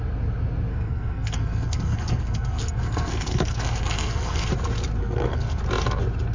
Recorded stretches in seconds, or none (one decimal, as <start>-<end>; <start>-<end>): 0.0-0.7; 4.5-5.0; 5.6-6.3